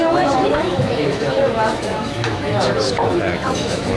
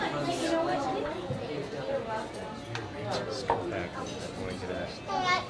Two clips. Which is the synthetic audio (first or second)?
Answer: first